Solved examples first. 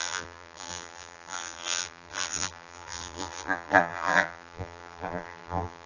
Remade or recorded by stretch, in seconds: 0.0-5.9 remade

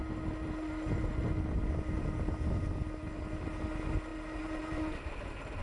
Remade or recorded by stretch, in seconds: 0.0-5.6 recorded

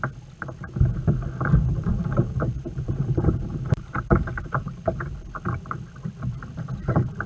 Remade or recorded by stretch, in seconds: 0.0-1.7 recorded; 1.7-5.3 remade; 5.3-7.3 recorded

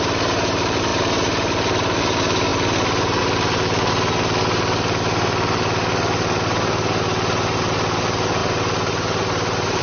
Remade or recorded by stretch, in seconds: 0.0-8.4 recorded; 8.4-9.8 remade

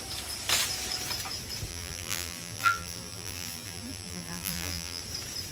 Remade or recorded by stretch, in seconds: 0.0-1.7 recorded; 1.7-5.0 remade; 5.0-5.5 recorded

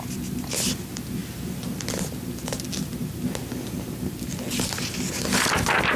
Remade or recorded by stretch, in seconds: 0.0-6.0 recorded

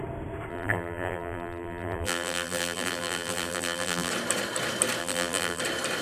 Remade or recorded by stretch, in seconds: 0.0-0.5 recorded; 0.5-4.1 remade; 4.1-5.0 recorded; 5.0-5.6 remade; 5.6-6.0 recorded